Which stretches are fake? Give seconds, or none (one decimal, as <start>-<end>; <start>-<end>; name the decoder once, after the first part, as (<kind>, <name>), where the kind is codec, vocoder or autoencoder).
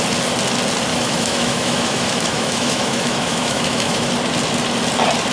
0.9-4.1 (autoencoder, DAC-VAE)